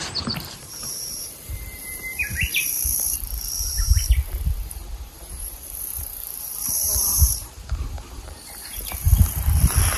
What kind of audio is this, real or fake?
fake